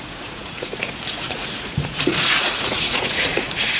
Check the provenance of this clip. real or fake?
fake